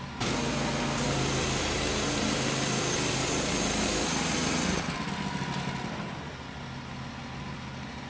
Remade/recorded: recorded